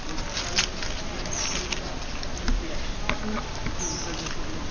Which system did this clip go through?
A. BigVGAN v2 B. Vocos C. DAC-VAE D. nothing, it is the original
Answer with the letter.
D